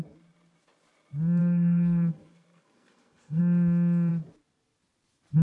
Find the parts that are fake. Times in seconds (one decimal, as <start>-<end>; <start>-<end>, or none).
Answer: 1.4-3.4